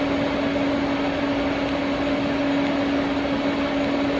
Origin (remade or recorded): recorded